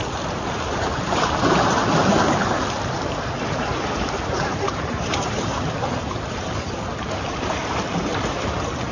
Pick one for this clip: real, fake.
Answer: fake